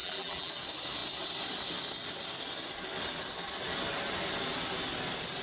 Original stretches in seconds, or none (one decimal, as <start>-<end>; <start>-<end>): 0.5-5.4